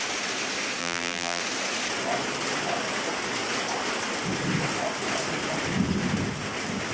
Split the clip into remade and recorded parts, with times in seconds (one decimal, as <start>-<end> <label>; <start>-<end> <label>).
0.0-0.8 recorded; 0.8-1.4 remade; 1.4-6.9 recorded